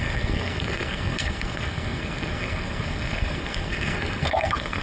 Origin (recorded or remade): remade